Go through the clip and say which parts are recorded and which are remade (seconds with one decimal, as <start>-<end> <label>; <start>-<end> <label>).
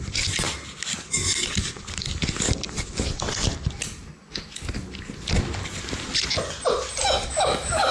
0.0-0.9 recorded; 0.9-1.7 remade; 1.7-7.0 recorded; 7.0-7.9 remade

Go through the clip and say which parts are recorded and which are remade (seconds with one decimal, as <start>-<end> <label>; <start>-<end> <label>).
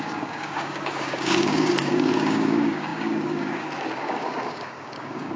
0.0-5.4 remade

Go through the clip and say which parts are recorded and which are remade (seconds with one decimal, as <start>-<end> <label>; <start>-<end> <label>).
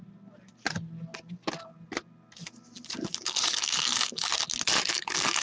0.0-3.2 recorded; 3.2-4.3 remade; 4.3-4.9 recorded; 4.9-5.4 remade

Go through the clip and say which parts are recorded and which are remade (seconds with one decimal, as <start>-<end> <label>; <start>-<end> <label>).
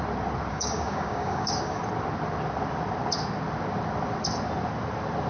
0.0-0.5 recorded; 0.5-1.8 remade; 1.8-5.3 recorded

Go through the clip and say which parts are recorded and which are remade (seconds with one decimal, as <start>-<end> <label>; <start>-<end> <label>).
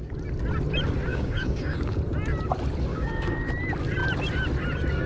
0.0-1.1 recorded; 1.1-2.0 remade; 2.0-2.9 recorded; 2.9-3.5 remade; 3.5-5.1 recorded